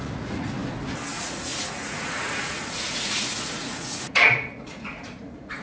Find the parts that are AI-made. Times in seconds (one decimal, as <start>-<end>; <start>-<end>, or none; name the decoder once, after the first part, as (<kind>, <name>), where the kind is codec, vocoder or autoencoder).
0.0-0.6 (vocoder, Vocos); 1.1-5.6